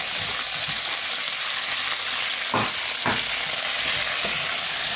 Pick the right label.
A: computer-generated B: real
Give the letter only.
B